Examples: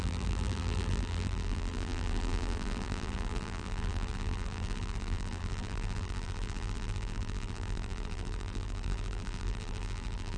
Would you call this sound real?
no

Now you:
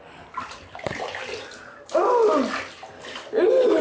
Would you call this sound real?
yes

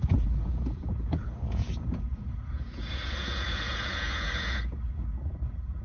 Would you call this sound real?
no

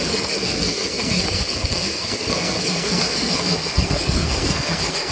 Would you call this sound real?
no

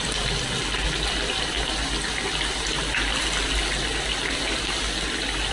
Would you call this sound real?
yes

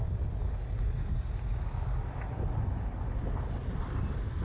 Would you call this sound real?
yes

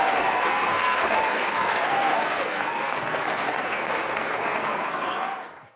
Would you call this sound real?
no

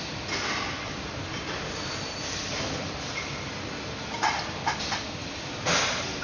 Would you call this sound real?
yes